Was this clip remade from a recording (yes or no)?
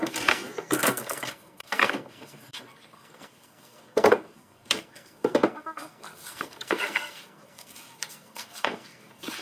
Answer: yes